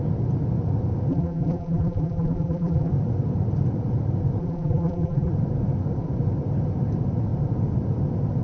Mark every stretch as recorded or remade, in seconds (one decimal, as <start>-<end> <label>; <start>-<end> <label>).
0.0-1.1 recorded; 1.1-2.9 remade; 2.9-4.4 recorded; 4.4-5.3 remade; 5.3-8.4 recorded